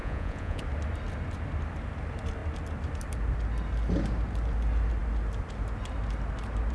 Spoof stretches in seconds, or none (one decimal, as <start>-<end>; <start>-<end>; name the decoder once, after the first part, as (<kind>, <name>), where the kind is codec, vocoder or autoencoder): 0.0-0.6 (vocoder, Vocos)